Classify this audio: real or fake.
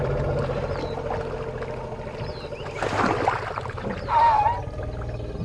real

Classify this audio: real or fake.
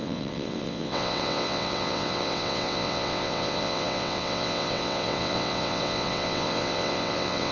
fake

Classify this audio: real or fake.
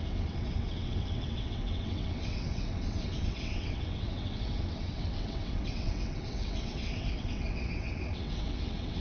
fake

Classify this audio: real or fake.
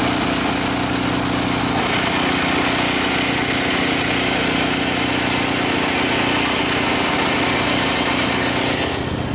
real